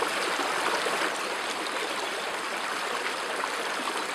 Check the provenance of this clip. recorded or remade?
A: recorded